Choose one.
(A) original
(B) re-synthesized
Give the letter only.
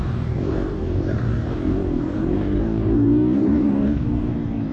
B